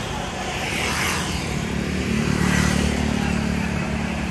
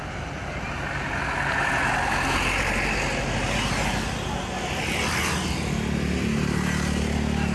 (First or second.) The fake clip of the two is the first